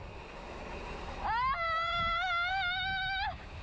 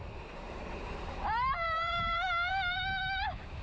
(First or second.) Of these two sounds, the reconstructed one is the second